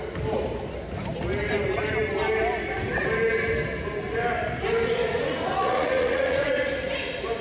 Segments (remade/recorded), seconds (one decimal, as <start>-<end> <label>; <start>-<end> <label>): 0.0-5.0 recorded; 5.0-6.5 remade; 6.5-7.4 recorded